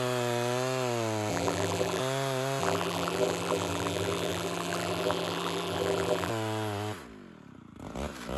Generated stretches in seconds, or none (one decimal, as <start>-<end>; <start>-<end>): 1.3-2.0; 2.6-6.3